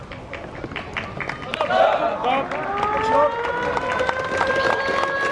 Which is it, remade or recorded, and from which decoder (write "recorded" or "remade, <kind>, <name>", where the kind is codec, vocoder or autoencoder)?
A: recorded